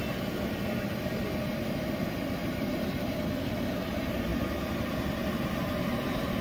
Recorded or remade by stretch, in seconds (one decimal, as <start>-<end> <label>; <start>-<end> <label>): 0.0-2.4 recorded; 2.4-3.2 remade; 3.2-6.4 recorded